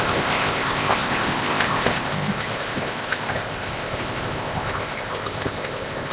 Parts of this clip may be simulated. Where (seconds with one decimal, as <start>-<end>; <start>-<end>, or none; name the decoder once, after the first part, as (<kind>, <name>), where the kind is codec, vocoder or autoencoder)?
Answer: 0.0-6.1 (codec, ZipCodec)